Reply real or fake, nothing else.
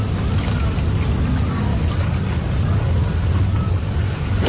real